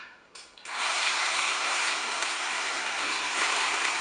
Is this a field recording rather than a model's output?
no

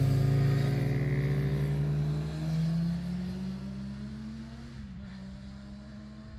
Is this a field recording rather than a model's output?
yes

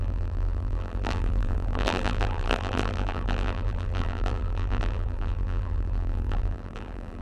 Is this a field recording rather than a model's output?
no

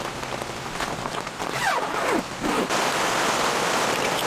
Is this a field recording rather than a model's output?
yes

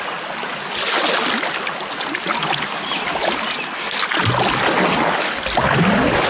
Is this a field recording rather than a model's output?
yes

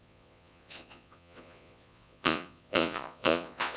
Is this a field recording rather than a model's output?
no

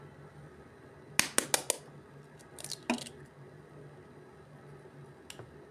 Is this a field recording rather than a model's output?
yes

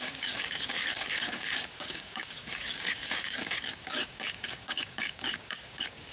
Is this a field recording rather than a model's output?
no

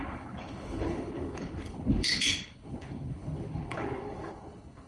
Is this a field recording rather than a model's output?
no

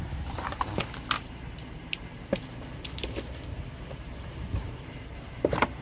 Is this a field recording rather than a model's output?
no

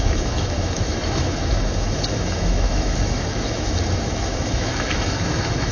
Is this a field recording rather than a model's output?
no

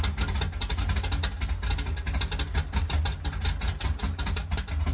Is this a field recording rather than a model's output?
yes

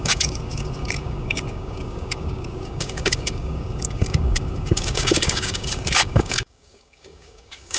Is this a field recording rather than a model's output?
no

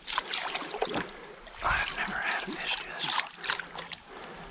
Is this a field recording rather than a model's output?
yes